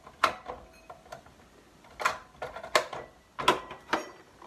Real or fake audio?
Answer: real